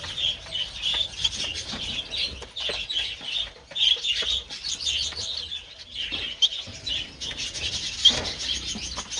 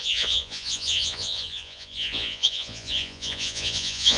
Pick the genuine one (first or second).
first